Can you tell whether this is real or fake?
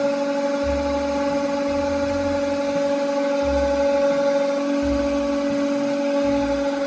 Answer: real